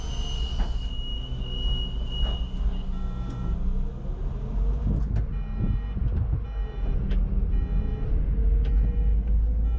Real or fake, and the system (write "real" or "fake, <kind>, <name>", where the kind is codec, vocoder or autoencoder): real